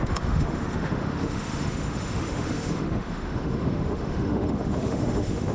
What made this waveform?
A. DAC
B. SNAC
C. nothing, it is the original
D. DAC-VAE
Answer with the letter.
D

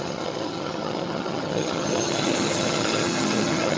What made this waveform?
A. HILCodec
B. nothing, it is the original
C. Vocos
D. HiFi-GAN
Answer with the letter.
D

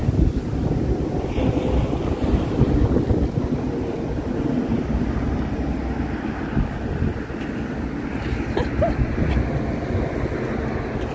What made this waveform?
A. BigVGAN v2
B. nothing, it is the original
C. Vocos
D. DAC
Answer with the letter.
B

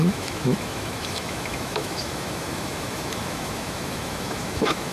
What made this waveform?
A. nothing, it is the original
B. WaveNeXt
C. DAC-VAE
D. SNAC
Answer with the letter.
C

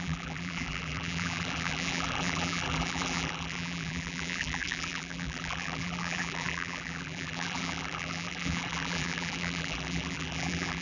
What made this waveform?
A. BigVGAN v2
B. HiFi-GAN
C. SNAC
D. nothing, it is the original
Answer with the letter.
A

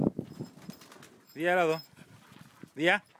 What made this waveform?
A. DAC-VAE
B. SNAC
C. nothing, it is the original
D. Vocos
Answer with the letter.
C